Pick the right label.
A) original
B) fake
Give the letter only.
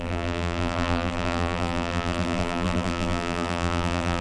B